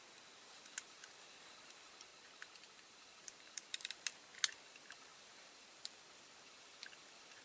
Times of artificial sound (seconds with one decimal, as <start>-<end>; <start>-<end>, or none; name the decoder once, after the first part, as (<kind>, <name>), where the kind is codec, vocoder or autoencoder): 2.1-3.9 (vocoder, BigVGAN v2); 5.1-5.9